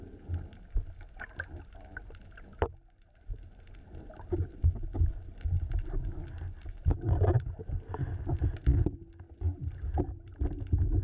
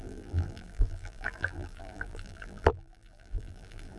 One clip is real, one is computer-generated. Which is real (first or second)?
first